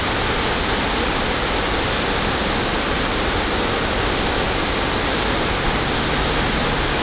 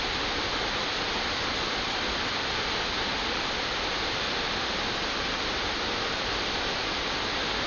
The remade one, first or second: second